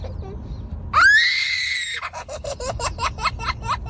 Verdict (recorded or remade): recorded